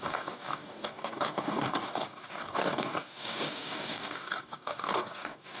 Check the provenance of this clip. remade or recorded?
remade